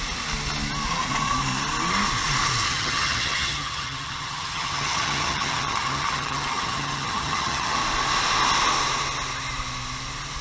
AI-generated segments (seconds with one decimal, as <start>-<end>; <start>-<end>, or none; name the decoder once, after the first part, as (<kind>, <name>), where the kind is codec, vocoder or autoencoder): 2.7-7.8 (vocoder, HiFi-GAN)